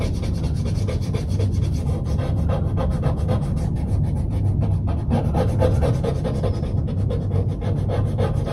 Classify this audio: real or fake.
real